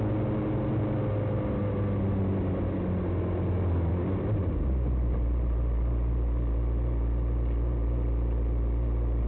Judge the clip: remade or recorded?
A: recorded